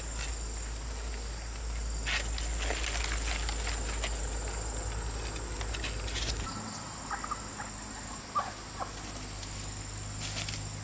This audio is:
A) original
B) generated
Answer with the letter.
A